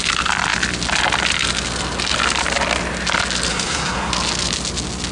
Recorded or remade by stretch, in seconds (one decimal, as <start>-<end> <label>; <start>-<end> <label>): 0.0-3.5 recorded; 3.5-4.1 remade; 4.1-5.1 recorded